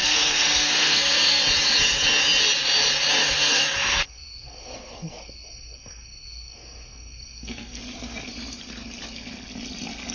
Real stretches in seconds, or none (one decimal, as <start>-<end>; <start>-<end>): 1.4-3.2; 7.8-10.1